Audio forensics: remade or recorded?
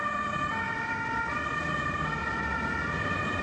remade